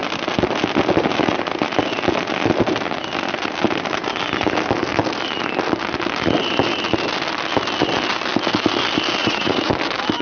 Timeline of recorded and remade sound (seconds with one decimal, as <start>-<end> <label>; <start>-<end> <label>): 0.0-9.2 recorded; 9.2-9.7 remade; 9.7-10.2 recorded